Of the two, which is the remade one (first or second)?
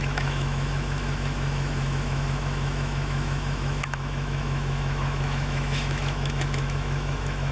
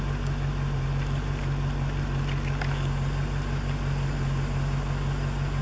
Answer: first